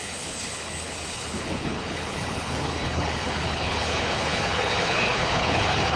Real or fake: fake